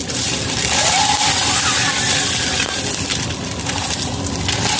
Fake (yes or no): no